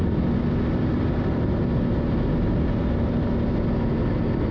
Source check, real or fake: real